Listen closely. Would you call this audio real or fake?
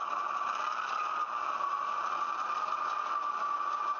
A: real